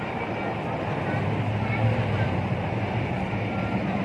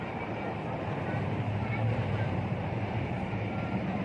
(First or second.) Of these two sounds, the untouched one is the first